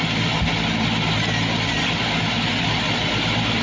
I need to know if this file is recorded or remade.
recorded